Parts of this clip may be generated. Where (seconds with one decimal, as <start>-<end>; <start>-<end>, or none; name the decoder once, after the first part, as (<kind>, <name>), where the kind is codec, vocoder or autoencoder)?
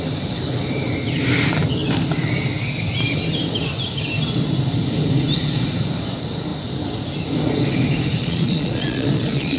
8.2-9.6 (vocoder, Vocos)